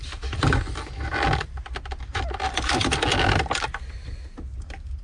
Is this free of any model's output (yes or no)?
yes